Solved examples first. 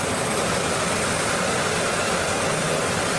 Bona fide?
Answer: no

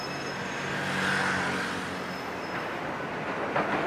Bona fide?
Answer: yes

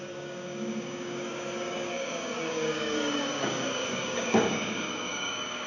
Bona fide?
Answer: no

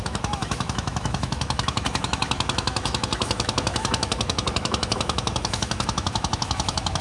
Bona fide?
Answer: no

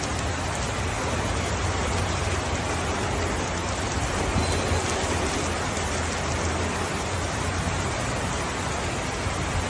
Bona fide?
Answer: yes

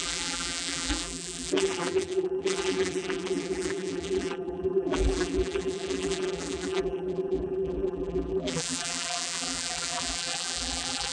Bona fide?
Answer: no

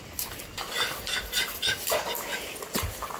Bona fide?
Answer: no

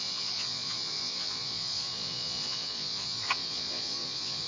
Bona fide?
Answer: no